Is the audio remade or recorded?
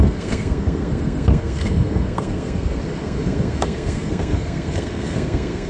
remade